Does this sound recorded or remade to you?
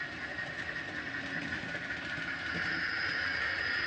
recorded